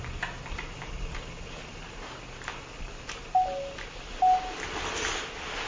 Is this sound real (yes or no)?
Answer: yes